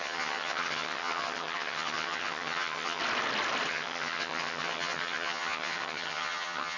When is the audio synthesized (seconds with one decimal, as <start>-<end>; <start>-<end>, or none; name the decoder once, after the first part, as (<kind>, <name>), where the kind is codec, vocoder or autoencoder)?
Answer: 0.0-3.0 (vocoder, HiFi-GAN); 3.7-6.8